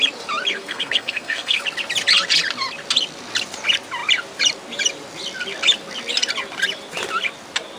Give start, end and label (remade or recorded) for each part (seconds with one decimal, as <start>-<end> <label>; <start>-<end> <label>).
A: 0.0-0.5 recorded; 0.5-1.6 remade; 1.6-7.8 recorded